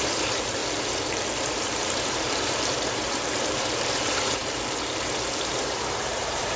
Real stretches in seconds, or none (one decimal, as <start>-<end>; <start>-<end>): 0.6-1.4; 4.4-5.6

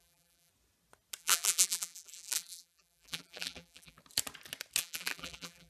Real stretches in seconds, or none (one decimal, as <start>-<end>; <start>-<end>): 0.5-1.2; 4.0-4.8

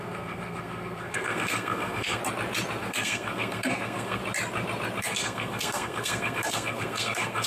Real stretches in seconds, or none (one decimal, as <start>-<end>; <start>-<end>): 2.2-2.8; 4.2-5.0

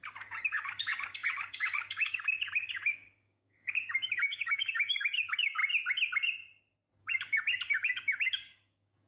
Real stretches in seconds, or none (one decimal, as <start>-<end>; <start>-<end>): 5.6-7.0

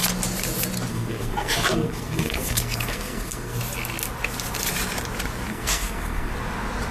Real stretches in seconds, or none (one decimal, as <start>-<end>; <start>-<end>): 0.0-0.9; 3.6-5.5; 6.3-6.9

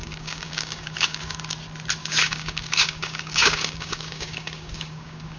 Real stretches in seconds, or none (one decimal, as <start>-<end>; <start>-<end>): 1.4-2.0

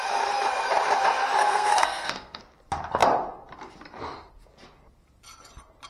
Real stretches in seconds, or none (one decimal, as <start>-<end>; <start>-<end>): 0.0-1.4; 2.4-5.9